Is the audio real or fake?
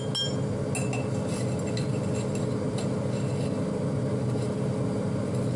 real